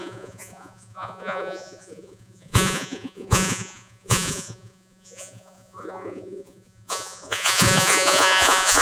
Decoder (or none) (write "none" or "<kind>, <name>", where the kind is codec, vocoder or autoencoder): vocoder, Vocos